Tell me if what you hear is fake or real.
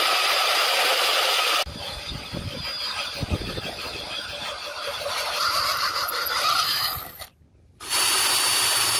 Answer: real